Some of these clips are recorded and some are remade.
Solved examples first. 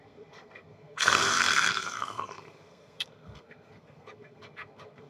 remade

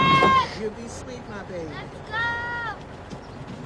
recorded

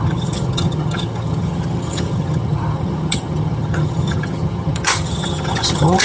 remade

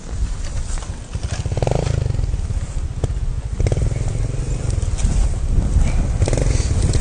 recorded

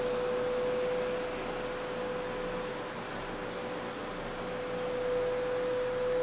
recorded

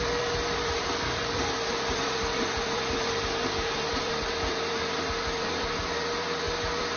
remade